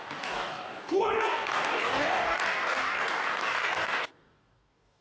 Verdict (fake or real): fake